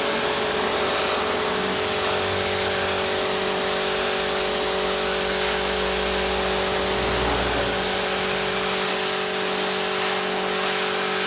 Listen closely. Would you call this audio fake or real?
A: real